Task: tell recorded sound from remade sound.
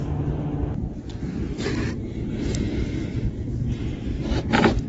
recorded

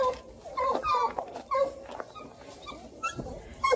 remade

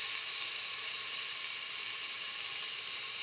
remade